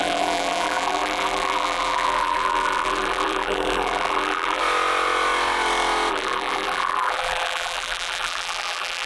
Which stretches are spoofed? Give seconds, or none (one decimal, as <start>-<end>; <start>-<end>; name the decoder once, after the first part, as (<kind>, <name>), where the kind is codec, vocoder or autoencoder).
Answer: 0.0-4.6 (vocoder, BigVGAN v2); 6.1-9.1